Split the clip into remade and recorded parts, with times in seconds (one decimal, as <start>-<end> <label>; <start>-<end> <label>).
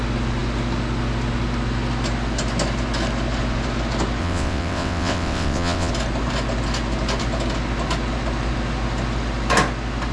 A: 0.0-4.2 recorded; 4.2-5.9 remade; 5.9-10.1 recorded